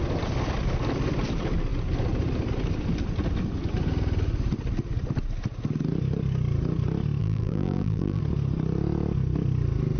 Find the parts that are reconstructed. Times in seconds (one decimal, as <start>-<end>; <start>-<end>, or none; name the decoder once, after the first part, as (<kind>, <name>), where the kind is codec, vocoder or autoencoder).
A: 7.2-8.2 (vocoder, BigVGAN v2)